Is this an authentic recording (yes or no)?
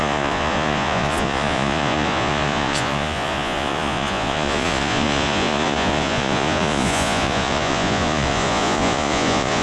no